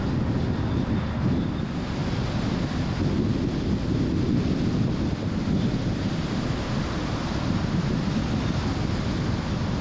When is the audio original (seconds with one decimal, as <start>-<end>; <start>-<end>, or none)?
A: 0.0-9.8